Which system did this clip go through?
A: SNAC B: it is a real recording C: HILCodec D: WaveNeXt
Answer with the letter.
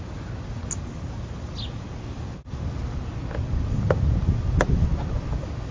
B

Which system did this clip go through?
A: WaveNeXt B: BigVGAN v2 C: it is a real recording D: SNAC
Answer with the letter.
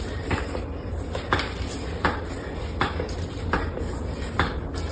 C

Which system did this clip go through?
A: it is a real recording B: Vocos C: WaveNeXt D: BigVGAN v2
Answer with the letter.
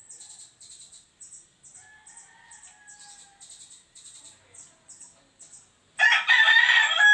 A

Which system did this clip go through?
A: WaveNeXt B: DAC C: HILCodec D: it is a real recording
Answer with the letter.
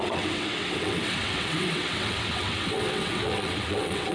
A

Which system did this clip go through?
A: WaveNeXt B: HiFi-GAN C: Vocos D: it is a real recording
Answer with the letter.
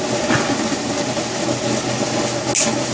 D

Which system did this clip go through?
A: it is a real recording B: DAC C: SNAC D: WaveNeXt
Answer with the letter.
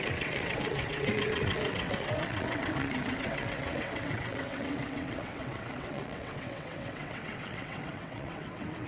D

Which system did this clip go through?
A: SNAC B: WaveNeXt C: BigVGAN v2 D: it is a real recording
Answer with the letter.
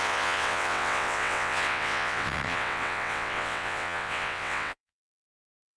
B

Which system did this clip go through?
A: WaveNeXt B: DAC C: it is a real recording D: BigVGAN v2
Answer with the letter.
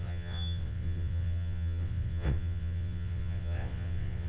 A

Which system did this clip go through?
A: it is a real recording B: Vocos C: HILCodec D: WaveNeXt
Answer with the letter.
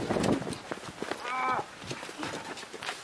A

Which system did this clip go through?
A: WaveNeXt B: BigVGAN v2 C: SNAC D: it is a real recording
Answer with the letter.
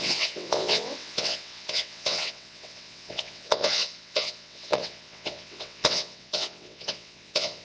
A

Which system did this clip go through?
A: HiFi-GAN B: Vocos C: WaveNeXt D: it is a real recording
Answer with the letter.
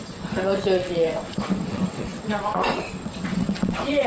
C